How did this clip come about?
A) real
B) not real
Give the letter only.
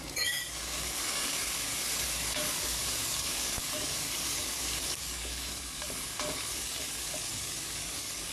B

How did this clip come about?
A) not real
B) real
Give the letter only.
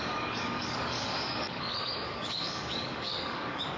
A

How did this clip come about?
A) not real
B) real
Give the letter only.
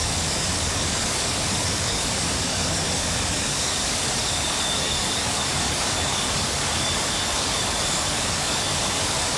A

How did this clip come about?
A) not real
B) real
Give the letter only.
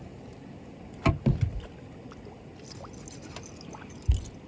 B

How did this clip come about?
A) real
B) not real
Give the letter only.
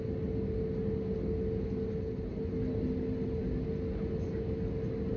A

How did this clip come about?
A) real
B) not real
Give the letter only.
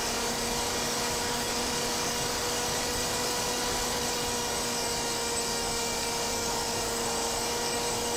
B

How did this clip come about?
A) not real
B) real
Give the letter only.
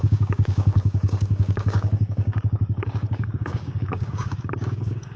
A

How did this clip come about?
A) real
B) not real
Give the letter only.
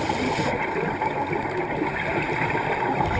A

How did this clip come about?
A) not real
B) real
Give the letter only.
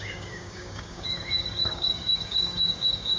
A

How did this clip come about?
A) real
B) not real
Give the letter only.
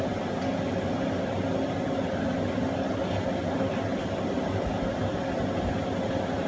A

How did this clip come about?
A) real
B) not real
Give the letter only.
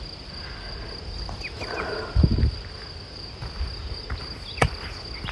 A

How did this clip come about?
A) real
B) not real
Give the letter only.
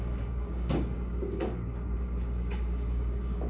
B